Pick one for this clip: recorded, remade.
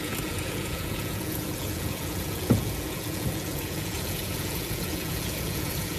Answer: remade